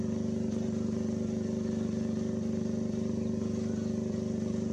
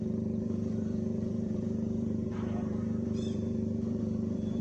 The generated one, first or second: second